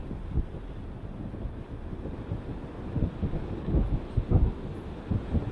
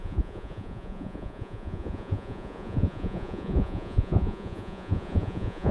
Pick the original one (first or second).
first